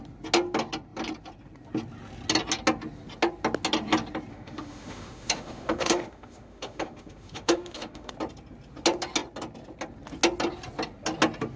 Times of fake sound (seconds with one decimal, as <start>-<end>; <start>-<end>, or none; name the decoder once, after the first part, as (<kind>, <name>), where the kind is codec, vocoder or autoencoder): 4.3-8.1 (autoencoder, DAC-VAE)